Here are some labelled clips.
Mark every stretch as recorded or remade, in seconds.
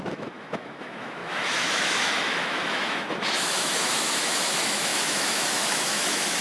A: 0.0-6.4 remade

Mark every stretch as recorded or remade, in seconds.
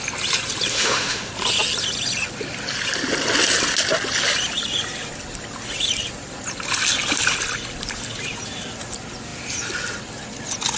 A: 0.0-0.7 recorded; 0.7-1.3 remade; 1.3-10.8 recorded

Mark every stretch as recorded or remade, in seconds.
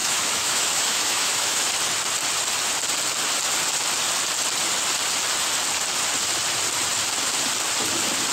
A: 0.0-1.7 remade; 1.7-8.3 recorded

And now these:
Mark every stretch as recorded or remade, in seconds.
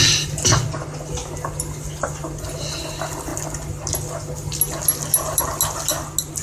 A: 0.0-6.4 recorded